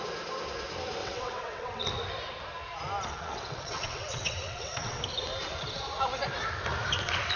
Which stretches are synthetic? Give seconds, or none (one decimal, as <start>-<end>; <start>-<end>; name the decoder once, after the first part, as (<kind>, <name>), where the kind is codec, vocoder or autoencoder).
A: 1.0-1.9 (vocoder, WaveNeXt); 3.1-5.0